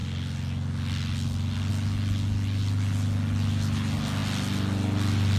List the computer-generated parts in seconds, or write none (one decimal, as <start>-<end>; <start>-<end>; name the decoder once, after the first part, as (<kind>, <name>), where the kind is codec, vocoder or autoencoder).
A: none